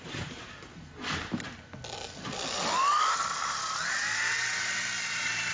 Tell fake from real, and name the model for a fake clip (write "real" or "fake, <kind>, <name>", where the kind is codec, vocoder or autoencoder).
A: real